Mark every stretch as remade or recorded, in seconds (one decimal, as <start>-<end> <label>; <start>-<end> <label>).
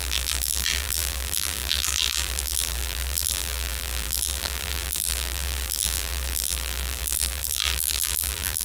0.0-8.6 remade